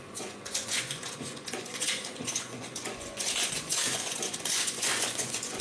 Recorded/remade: remade